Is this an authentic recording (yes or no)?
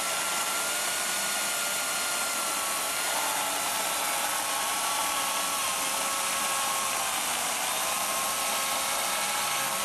yes